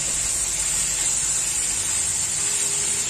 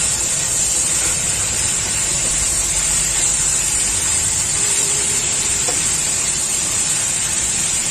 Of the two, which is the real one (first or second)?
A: first